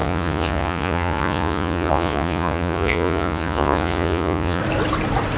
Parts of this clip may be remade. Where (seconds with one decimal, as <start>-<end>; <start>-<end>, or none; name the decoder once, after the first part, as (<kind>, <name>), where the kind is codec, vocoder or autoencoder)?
0.0-4.6 (vocoder, Vocos)